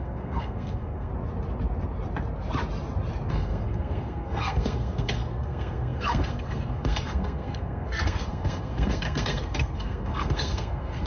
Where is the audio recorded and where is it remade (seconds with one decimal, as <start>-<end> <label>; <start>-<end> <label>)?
0.0-1.1 remade; 1.1-3.3 recorded; 3.3-11.1 remade